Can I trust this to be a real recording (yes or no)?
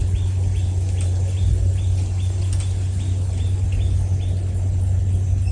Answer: yes